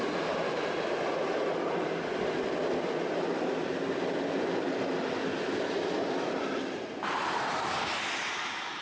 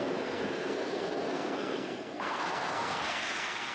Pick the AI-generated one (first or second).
second